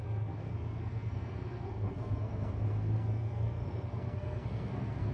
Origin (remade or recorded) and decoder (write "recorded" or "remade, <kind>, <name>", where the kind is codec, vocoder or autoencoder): remade, codec, SNAC